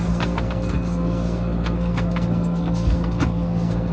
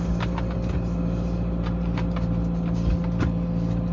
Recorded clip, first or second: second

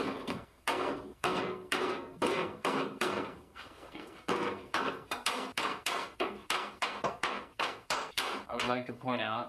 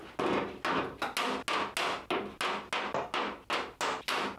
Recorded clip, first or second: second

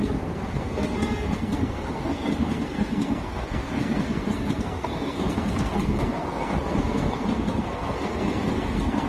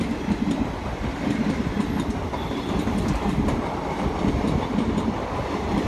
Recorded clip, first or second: second